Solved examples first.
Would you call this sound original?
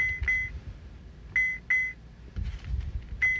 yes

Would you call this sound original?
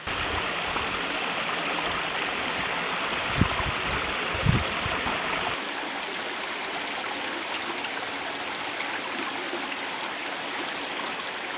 yes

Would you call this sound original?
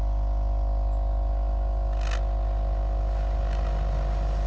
yes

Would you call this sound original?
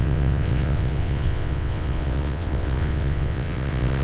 no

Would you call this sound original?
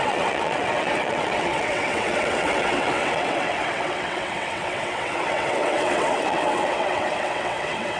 no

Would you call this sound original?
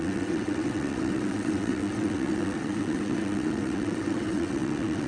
no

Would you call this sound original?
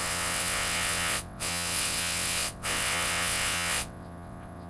no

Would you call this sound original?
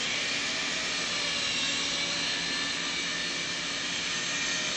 yes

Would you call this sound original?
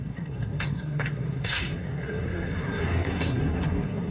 no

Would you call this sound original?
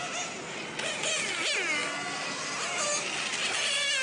yes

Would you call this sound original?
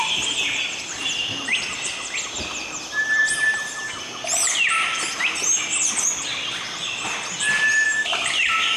yes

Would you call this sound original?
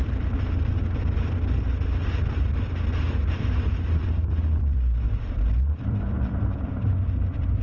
no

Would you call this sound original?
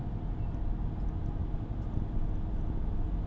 yes